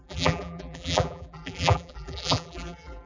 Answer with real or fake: fake